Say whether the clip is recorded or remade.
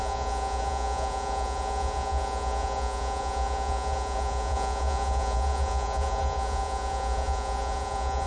remade